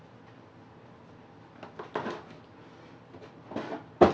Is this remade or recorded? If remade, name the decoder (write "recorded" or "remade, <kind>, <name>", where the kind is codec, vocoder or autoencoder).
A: recorded